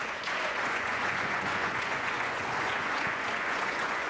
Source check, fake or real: fake